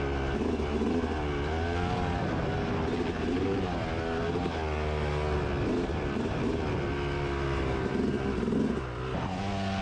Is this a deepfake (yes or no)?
no